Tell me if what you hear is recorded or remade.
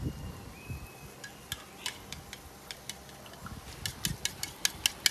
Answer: recorded